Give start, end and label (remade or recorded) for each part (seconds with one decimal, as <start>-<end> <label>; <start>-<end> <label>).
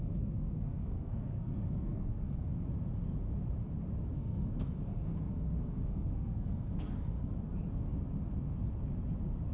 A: 0.0-2.5 remade; 2.5-4.1 recorded; 4.1-7.3 remade; 7.3-9.5 recorded